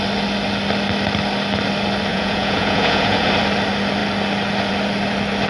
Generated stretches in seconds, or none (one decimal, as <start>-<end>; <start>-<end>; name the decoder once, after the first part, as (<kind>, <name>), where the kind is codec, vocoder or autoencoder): 2.1-3.3 (vocoder, Vocos)